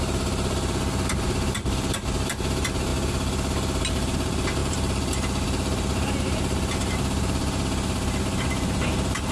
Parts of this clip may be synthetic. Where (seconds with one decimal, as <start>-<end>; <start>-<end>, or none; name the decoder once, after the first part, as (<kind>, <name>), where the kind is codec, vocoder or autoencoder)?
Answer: 0.0-2.9 (vocoder, BigVGAN v2); 3.9-9.3

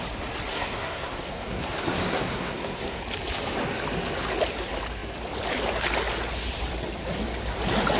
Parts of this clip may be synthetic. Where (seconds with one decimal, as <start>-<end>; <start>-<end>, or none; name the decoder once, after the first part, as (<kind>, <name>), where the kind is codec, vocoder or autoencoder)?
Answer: 0.5-3.0 (codec, SNAC)

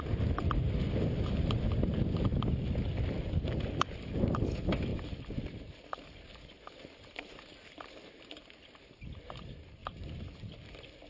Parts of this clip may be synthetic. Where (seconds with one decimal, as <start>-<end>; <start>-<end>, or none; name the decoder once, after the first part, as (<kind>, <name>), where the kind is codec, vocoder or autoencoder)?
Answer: 9.8-11.1 (vocoder, BigVGAN v2)

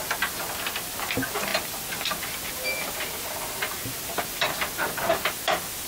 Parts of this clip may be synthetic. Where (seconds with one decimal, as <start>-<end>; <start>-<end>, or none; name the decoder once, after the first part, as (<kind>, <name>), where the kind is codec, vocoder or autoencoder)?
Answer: none

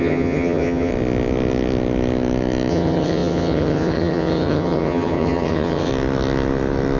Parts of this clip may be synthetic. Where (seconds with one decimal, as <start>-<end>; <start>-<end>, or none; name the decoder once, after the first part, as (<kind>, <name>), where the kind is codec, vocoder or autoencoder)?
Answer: 0.0-0.9 (vocoder, HiFi-GAN); 2.7-5.9

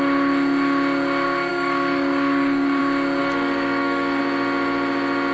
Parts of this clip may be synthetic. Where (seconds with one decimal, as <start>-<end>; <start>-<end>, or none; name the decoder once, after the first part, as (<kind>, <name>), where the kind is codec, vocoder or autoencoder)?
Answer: 1.5-2.8 (codec, DAC); 3.2-4.2

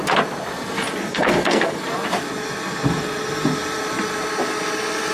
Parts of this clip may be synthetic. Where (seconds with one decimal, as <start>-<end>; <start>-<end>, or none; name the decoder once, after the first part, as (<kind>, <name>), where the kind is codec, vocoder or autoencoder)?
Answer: 1.1-1.8 (codec, SNAC)

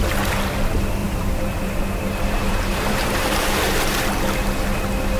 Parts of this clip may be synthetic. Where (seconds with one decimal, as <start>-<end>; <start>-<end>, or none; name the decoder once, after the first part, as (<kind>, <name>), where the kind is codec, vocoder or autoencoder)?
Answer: 1.0-4.1 (vocoder, BigVGAN v2)